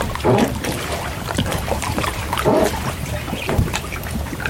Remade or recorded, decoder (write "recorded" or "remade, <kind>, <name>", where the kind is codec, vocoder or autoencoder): remade, vocoder, BigVGAN v2